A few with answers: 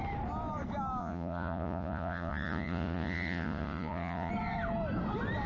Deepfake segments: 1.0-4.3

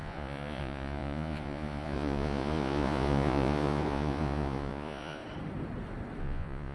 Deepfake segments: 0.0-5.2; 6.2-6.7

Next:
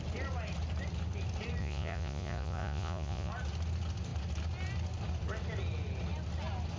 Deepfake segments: 1.6-3.3

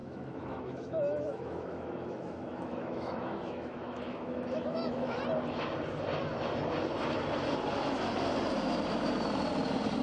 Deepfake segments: 0.0-5.2

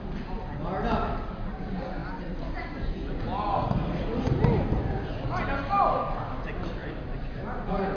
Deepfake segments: 3.5-4.0